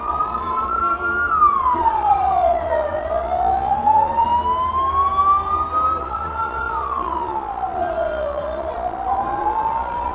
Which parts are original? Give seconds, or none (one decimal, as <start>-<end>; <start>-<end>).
0.8-1.6; 4.3-6.0